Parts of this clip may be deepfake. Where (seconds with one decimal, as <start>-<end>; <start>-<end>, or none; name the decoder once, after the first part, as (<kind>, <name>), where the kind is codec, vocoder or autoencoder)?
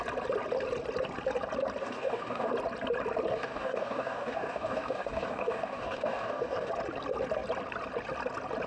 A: 1.8-2.5 (codec, DAC); 3.3-6.7